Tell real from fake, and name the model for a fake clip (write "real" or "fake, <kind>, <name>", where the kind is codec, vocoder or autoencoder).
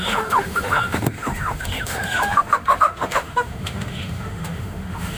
fake, autoencoder, DAC-VAE